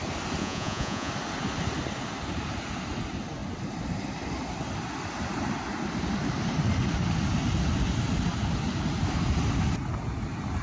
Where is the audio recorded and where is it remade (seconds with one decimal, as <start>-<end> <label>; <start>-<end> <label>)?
0.0-0.4 recorded; 0.4-1.1 remade; 1.1-10.6 recorded